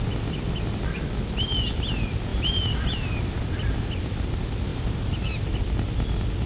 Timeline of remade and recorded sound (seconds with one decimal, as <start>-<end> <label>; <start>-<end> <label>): 0.0-4.7 recorded; 4.7-5.6 remade; 5.6-6.5 recorded